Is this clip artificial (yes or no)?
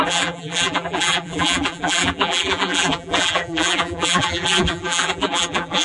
yes